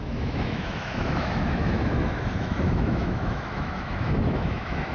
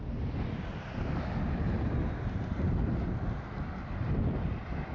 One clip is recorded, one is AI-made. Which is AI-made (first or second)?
first